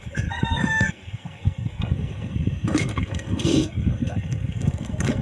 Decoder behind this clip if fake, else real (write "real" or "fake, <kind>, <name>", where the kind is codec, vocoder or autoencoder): fake, codec, SNAC